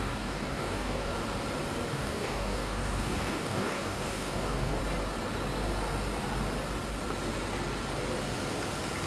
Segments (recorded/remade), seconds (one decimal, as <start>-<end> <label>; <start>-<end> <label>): 0.0-1.1 remade; 1.1-1.9 recorded; 1.9-4.8 remade; 4.8-9.1 recorded

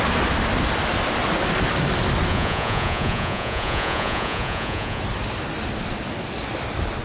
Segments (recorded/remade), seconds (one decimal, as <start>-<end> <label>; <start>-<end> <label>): 0.0-2.3 recorded; 2.3-5.0 remade; 5.0-7.0 recorded

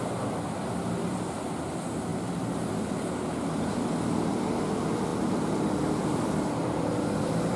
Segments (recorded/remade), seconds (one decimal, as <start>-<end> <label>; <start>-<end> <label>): 0.0-2.1 recorded; 2.1-2.7 remade; 2.7-5.1 recorded; 5.1-6.8 remade; 6.8-7.6 recorded

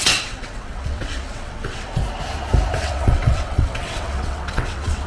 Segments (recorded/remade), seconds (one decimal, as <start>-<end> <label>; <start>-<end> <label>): 0.0-2.0 remade; 2.0-2.8 recorded; 2.8-5.1 remade

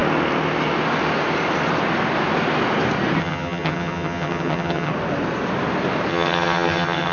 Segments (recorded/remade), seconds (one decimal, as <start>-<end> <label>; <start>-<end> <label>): 0.0-3.2 recorded; 3.2-4.9 remade; 4.9-6.1 recorded; 6.1-7.1 remade